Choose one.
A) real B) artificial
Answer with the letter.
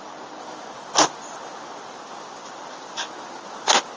A